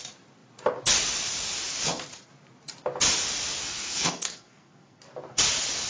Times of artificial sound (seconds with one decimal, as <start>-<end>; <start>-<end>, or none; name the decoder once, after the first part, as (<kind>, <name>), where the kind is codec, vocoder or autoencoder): 3.6-5.0 (codec, SNAC)